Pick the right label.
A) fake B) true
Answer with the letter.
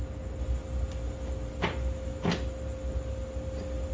B